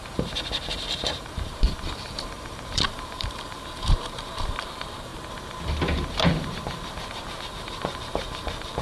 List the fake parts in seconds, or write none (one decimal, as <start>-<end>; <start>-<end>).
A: 0.0-5.1; 7.4-8.8